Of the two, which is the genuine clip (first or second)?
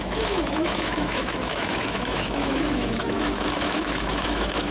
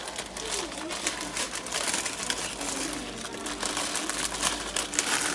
second